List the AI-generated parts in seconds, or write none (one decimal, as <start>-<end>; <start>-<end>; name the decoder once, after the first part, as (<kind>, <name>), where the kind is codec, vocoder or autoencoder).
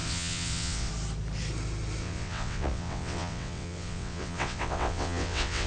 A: 0.0-0.9 (vocoder, WaveNeXt); 2.0-5.7